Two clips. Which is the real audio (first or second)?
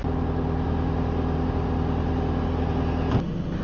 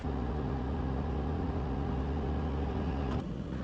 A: first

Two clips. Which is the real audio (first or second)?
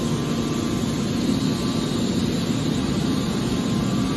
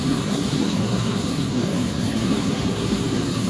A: first